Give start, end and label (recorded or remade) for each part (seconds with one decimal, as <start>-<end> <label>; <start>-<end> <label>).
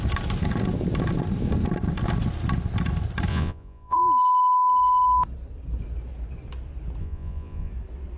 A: 0.0-3.3 recorded; 3.3-4.0 remade; 4.0-7.0 recorded; 7.0-7.7 remade; 7.7-8.2 recorded